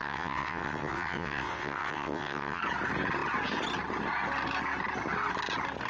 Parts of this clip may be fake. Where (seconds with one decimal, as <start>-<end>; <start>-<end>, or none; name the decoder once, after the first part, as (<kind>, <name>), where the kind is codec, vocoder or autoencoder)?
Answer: 0.0-2.6 (vocoder, WaveNeXt)